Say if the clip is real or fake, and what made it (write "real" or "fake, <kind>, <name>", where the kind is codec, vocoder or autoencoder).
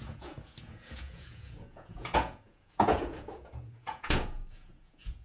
fake, vocoder, Vocos